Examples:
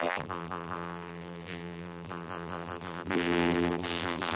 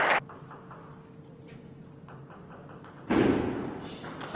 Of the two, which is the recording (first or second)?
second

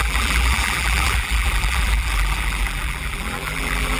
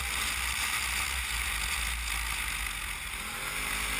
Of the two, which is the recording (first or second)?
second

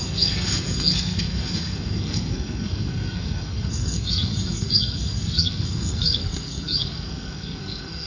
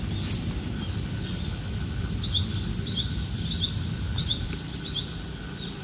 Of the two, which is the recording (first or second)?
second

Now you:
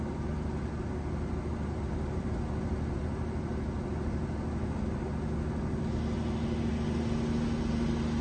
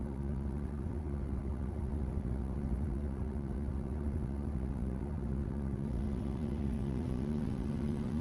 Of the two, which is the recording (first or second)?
first